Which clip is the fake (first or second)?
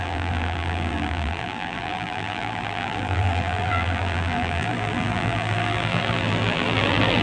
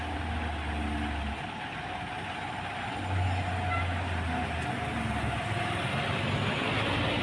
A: first